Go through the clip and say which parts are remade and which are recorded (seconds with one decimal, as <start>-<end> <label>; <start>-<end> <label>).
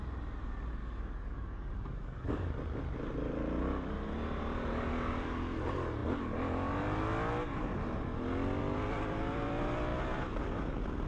0.0-0.8 recorded; 0.8-2.5 remade; 2.5-11.1 recorded